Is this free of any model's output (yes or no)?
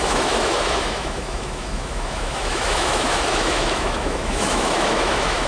no